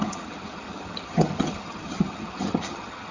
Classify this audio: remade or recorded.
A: remade